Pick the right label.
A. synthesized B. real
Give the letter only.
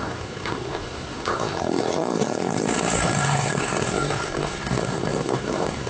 A